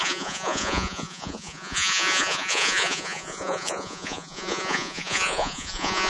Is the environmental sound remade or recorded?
remade